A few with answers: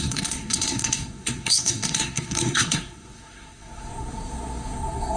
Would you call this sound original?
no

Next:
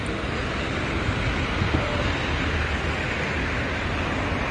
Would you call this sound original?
yes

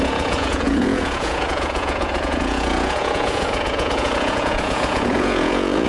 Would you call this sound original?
no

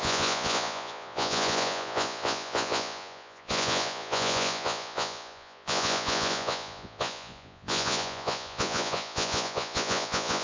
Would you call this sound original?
no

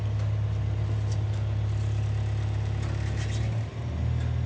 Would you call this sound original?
yes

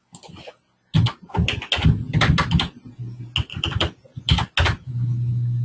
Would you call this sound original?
yes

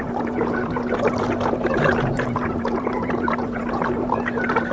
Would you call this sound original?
no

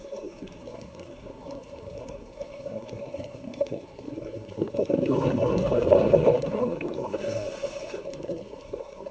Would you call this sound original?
no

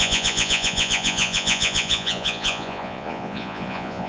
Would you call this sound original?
no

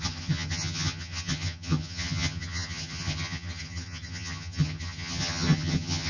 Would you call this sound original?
no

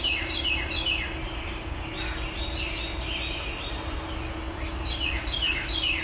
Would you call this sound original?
yes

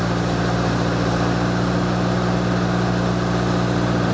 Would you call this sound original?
yes